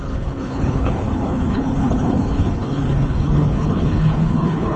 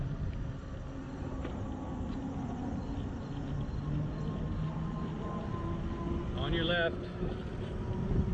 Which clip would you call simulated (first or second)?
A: first